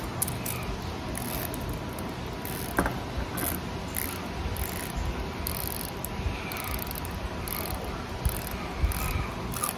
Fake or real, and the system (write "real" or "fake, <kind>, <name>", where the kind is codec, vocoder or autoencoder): real